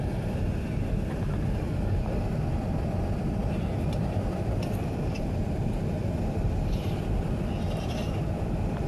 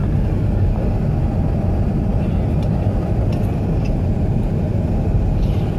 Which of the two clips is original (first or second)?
second